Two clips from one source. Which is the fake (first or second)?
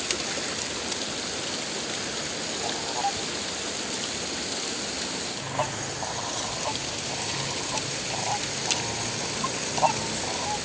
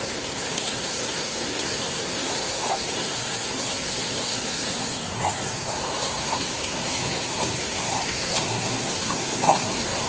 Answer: second